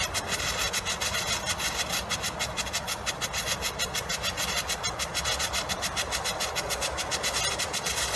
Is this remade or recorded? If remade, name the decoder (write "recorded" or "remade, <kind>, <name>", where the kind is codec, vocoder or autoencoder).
recorded